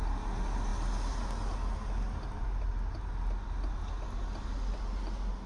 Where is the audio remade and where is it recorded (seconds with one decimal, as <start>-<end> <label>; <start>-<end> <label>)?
0.0-5.5 recorded